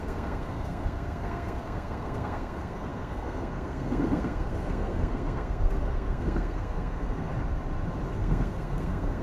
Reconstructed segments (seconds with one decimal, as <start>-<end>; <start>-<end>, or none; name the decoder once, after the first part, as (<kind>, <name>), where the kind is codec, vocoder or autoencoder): 0.0-7.3 (codec, SNAC); 8.1-9.2